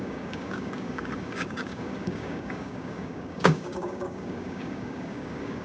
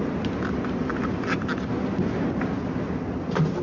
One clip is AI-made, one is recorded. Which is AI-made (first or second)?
first